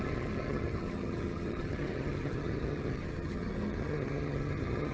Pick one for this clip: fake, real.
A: fake